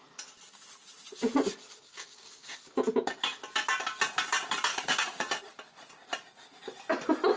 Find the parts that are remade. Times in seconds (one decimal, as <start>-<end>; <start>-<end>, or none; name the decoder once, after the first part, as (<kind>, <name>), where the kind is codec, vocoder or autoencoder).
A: 1.9-2.6 (codec, DAC); 4.7-5.4